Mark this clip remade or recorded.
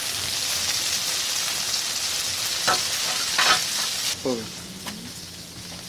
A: recorded